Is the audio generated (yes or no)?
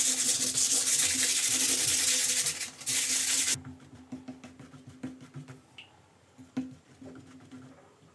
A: no